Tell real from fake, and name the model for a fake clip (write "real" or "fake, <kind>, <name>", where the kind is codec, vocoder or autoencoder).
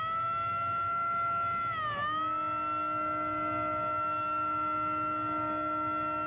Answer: real